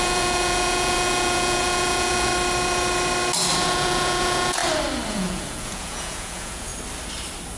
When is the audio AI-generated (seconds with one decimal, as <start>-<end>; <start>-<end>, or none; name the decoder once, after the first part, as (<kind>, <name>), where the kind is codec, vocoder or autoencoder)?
0.0-2.3 (vocoder, Vocos); 3.6-4.6; 5.1-6.7